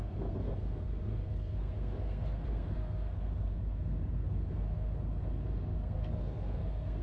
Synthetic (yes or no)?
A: yes